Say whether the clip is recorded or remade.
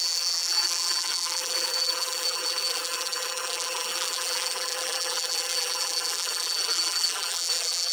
remade